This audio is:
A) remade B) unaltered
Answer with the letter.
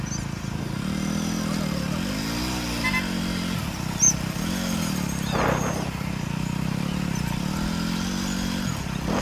B